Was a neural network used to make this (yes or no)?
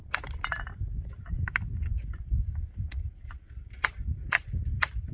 no